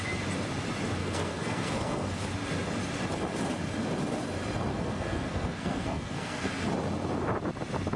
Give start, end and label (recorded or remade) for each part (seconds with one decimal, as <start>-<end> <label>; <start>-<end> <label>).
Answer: 0.0-1.0 recorded; 1.0-2.1 remade; 2.1-4.7 recorded; 4.7-6.5 remade; 6.5-8.0 recorded